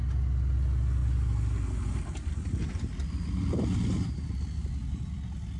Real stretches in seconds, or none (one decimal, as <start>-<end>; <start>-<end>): 0.0-5.6

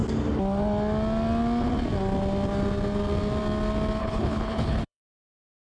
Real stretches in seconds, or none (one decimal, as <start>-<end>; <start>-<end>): 0.0-4.0; 5.0-5.6

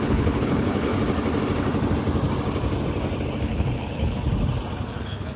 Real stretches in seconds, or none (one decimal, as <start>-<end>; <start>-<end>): 0.9-3.3; 4.3-4.9